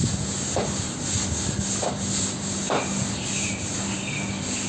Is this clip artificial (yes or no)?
no